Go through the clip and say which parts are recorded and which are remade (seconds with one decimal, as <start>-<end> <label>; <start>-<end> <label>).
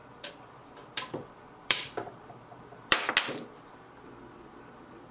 0.0-3.1 remade; 3.1-5.1 recorded